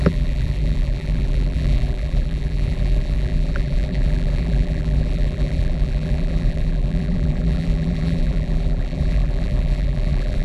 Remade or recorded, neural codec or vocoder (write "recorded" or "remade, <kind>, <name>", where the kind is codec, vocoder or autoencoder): remade, vocoder, BigVGAN v2